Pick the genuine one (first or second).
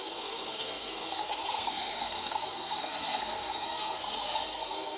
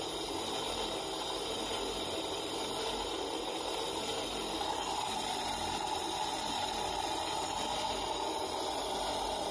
second